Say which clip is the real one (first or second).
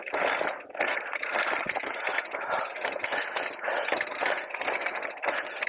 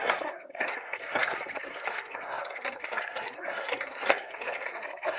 first